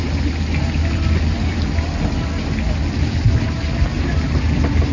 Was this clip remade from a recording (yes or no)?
no